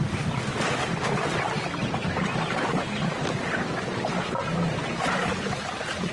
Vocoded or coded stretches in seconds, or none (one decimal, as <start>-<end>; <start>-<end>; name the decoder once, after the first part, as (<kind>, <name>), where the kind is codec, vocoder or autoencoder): 1.8-5.5 (vocoder, BigVGAN v2)